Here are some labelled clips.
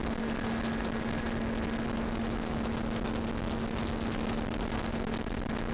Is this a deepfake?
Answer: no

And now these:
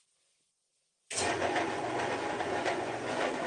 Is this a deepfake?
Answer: yes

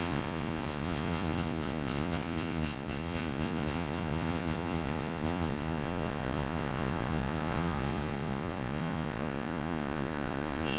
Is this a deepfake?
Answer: yes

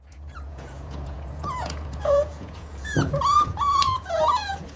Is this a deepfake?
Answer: yes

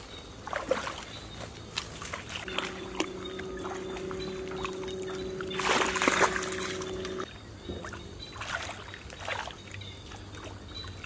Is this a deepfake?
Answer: no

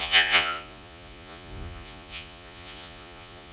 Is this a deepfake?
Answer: yes